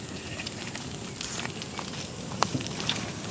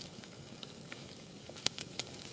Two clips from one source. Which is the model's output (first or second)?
second